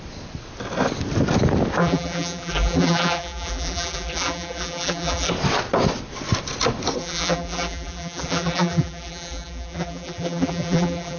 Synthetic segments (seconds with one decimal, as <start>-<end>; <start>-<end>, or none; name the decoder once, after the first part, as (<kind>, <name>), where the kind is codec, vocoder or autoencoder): 1.8-5.3 (vocoder, BigVGAN v2); 7.0-11.2